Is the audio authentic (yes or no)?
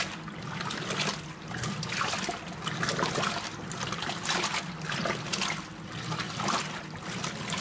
yes